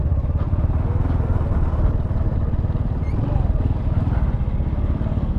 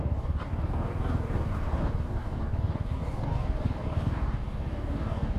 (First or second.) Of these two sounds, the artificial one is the second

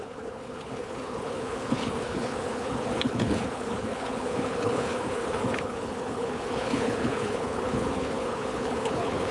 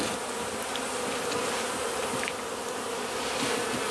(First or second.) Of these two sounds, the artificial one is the first